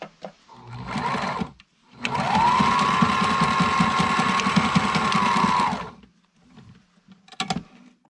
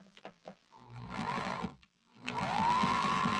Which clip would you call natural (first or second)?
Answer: first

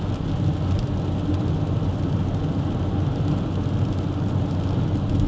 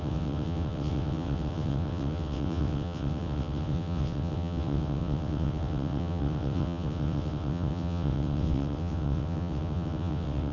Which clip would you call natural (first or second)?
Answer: first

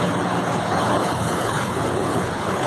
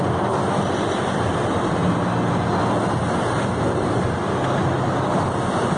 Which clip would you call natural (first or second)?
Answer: second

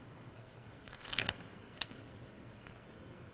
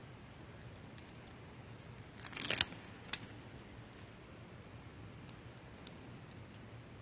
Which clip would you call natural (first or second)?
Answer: second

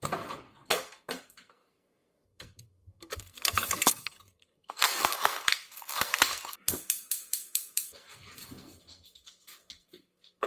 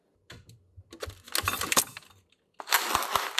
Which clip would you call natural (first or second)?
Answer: second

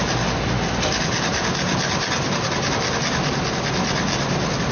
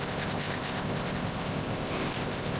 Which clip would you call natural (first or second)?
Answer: first